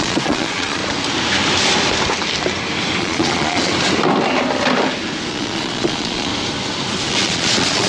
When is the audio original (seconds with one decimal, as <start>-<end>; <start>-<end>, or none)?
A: 0.8-3.0; 3.7-5.3; 6.3-7.1